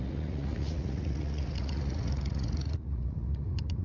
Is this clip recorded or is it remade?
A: remade